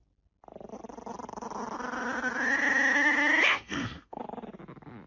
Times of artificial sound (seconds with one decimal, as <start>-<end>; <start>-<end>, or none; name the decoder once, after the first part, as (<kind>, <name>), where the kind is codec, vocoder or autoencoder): 3.5-4.2 (codec, SNAC)